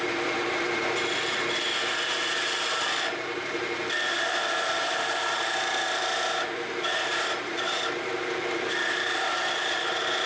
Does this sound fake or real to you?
fake